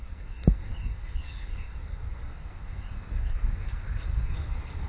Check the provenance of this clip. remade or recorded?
remade